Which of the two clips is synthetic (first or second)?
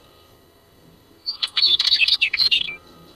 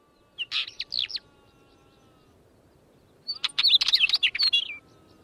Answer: first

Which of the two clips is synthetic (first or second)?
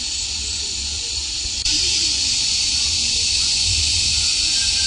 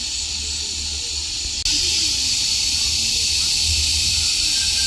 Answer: first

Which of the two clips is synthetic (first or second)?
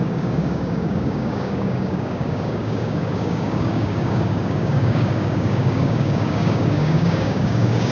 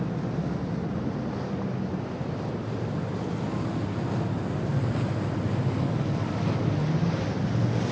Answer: first